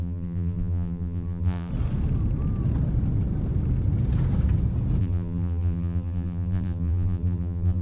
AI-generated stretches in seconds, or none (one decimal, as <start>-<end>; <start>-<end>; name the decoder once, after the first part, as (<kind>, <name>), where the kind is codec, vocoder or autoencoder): 0.0-1.7 (vocoder, BigVGAN v2); 5.0-7.8